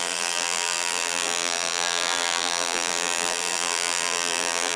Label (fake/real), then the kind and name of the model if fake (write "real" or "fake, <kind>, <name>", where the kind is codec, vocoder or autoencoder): fake, vocoder, BigVGAN v2